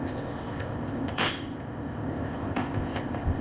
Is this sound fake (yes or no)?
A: yes